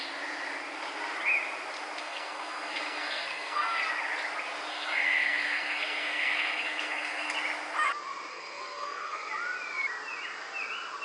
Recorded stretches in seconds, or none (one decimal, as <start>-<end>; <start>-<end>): 0.0-2.0; 3.8-4.7; 7.3-8.3; 9.3-11.0